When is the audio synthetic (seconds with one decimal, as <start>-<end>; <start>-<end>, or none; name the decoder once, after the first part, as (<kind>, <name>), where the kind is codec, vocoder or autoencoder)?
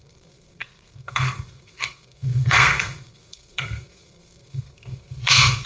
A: 0.0-5.7 (codec, SNAC)